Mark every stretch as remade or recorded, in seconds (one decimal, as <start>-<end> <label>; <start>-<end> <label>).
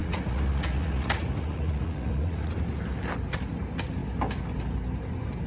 0.0-2.5 remade; 2.5-5.5 recorded